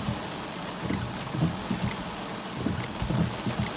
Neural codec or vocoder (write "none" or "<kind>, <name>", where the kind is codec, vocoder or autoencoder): none